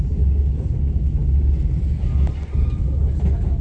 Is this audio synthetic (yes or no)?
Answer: no